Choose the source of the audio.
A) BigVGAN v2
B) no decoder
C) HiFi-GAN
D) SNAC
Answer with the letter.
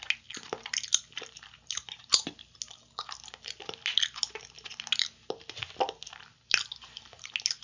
B